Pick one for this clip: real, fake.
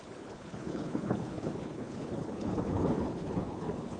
fake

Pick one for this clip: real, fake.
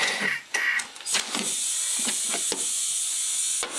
fake